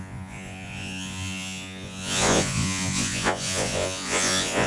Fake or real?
fake